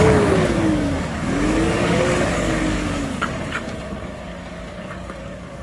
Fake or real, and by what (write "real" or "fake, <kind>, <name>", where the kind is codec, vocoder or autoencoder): fake, codec, DAC